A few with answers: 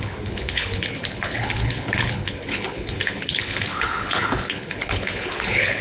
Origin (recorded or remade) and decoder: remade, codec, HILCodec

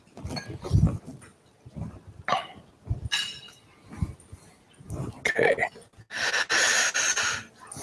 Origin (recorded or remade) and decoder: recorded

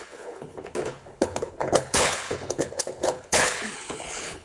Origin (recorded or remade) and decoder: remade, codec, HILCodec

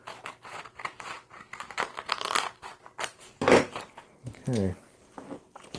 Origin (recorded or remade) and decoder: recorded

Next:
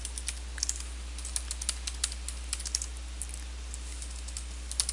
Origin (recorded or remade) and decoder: recorded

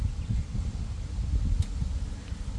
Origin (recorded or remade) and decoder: recorded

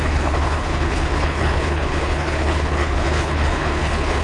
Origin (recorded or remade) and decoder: remade, codec, HILCodec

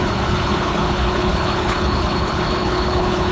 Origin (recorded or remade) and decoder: remade, codec, HILCodec